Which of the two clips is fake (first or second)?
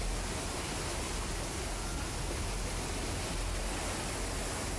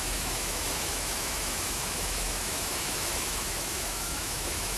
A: second